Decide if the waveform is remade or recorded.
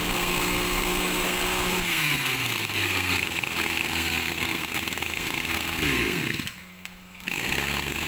remade